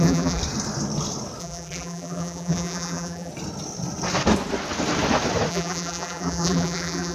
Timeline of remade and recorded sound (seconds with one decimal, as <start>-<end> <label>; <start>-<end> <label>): 0.0-0.4 remade; 0.4-1.4 recorded; 1.4-3.3 remade; 3.3-5.5 recorded; 5.5-7.1 remade